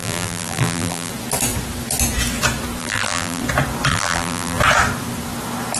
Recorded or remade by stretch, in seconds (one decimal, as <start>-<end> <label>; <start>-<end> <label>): 0.0-1.1 remade; 1.1-2.8 recorded; 2.8-3.4 remade; 3.4-3.9 recorded; 3.9-4.6 remade; 4.6-5.8 recorded